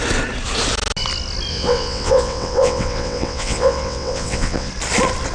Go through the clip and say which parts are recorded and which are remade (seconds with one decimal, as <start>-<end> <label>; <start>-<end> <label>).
0.0-1.5 recorded; 1.5-4.7 remade; 4.7-5.3 recorded